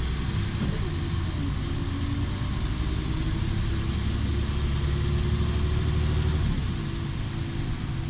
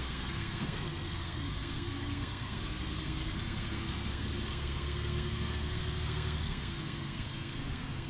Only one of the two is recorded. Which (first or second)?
first